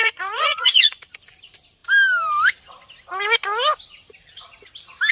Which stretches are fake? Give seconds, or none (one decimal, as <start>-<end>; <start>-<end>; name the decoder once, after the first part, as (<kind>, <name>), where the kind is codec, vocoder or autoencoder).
0.0-1.0 (vocoder, Vocos)